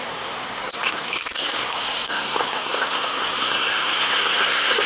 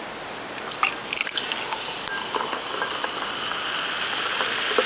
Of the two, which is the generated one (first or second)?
first